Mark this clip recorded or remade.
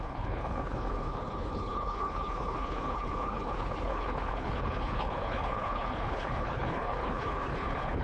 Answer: remade